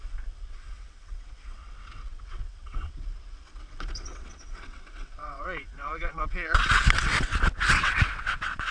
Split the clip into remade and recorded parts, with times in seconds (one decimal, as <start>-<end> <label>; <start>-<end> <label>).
0.0-8.7 remade